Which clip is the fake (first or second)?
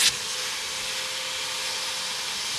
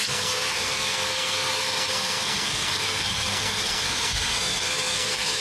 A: second